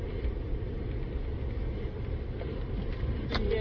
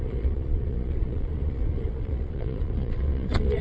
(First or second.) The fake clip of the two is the second